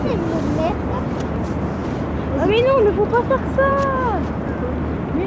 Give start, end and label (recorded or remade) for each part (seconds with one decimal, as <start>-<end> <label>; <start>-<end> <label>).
0.0-5.3 recorded

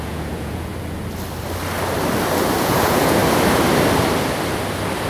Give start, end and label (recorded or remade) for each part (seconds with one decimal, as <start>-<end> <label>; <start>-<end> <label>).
0.0-0.7 remade; 0.7-2.6 recorded; 2.6-3.2 remade; 3.2-5.1 recorded

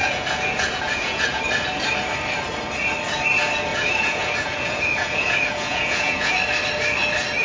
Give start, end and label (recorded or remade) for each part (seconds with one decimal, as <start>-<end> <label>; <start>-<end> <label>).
0.0-1.4 remade; 1.4-3.7 recorded; 3.7-6.3 remade; 6.3-7.4 recorded